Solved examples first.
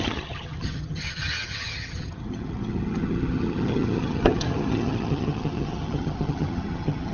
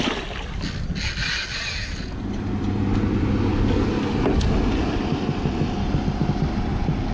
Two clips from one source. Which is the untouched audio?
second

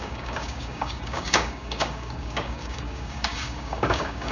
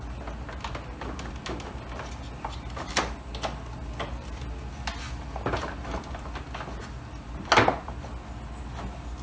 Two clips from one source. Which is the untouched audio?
second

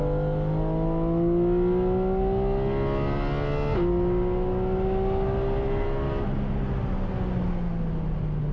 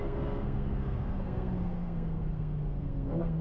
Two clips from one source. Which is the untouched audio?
first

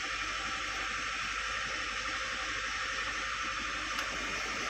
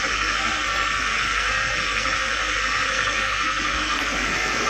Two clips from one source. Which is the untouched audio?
first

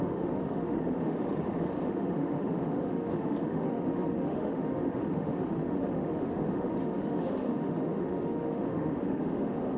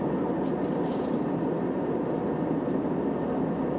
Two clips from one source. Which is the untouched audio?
second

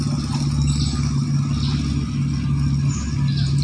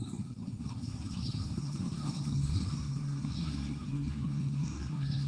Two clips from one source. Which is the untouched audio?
first